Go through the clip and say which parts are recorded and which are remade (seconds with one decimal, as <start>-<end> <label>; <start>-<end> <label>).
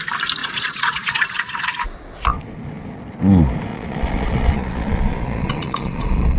0.0-0.4 recorded; 0.4-1.7 remade; 1.7-3.7 recorded; 3.7-6.4 remade